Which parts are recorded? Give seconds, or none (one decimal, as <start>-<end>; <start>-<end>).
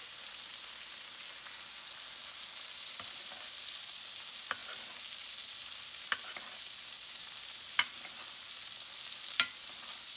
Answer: 0.0-10.2